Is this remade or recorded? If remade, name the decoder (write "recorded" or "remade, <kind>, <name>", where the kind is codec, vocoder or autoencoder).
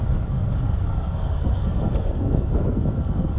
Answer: remade, codec, SNAC